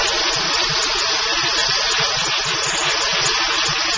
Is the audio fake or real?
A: real